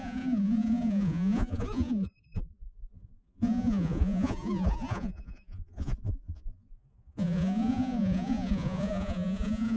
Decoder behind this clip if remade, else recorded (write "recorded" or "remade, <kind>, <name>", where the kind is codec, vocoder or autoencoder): remade, vocoder, Vocos